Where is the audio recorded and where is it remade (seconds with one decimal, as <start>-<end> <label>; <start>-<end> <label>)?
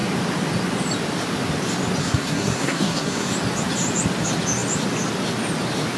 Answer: 0.0-2.0 recorded; 2.0-3.3 remade; 3.3-6.0 recorded